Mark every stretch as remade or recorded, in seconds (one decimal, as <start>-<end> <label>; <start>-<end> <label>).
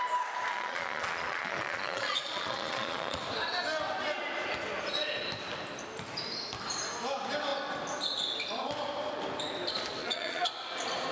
0.0-0.5 recorded; 0.5-3.2 remade; 3.2-10.0 recorded; 10.0-10.5 remade; 10.5-11.1 recorded